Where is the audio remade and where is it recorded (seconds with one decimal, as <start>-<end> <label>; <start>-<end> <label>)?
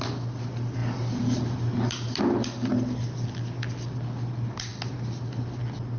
0.0-6.0 recorded